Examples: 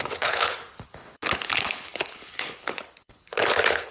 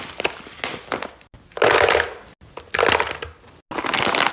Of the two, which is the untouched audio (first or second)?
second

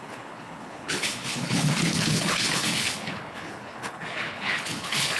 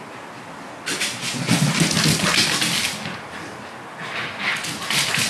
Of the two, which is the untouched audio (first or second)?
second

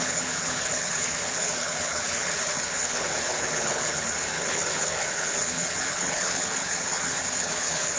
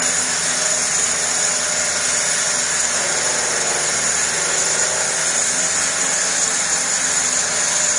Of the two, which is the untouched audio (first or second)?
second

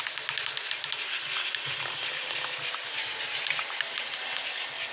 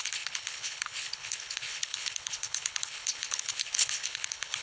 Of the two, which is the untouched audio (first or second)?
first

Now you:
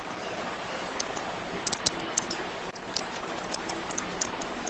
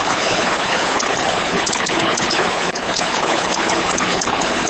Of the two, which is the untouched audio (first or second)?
first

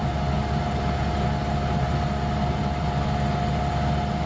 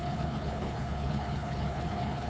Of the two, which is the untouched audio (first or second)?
first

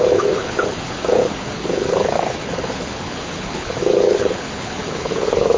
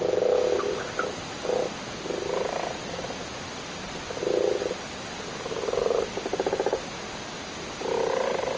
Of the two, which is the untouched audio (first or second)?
second